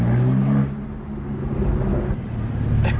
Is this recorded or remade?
recorded